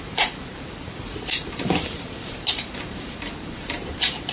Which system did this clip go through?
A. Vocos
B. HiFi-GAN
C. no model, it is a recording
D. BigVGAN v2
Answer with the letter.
D